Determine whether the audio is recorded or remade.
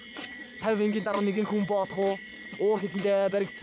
remade